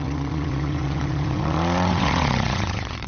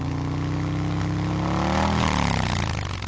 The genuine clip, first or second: second